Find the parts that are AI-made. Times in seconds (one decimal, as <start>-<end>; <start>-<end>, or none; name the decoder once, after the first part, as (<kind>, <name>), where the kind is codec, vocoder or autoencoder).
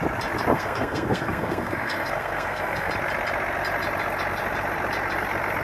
0.5-2.9 (codec, SNAC)